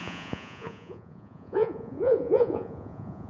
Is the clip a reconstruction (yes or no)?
yes